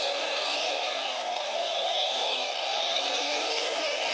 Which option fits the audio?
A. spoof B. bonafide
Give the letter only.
A